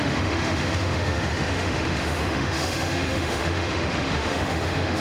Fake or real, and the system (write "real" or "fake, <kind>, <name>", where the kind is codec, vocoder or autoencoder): fake, autoencoder, DAC-VAE